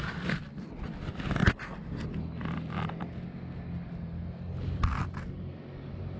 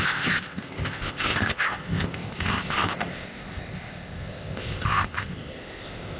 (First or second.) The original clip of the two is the first